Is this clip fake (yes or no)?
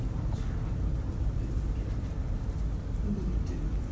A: no